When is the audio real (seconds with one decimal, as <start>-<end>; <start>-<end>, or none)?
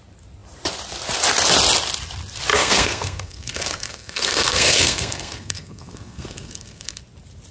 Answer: 0.0-2.5; 7.0-7.5